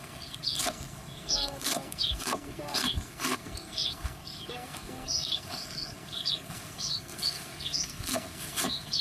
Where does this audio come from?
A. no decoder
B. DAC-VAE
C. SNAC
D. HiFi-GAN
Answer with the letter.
C